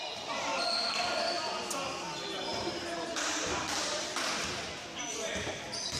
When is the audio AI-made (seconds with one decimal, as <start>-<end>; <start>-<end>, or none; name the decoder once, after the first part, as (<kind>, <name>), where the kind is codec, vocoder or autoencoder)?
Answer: 2.5-4.1 (vocoder, BigVGAN v2)